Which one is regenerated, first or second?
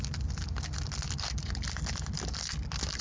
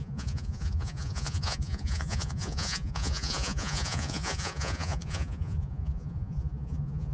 second